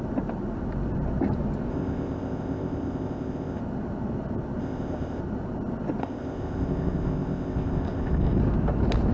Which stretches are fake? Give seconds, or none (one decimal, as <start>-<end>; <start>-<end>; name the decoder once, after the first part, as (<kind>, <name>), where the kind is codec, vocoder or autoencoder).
1.7-3.6 (codec, ZipCodec); 4.6-5.2; 6.0-8.4